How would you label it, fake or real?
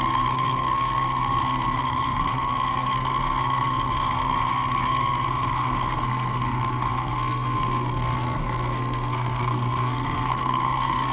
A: fake